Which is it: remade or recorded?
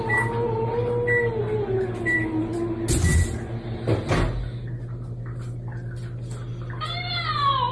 recorded